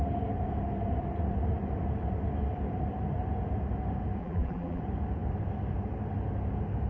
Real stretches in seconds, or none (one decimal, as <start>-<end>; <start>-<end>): 0.0-4.2; 4.8-6.9